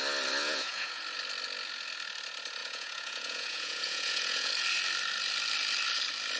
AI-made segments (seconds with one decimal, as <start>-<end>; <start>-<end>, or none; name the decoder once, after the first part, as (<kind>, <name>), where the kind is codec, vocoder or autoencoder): 0.4-1.0 (vocoder, Vocos); 2.6-4.5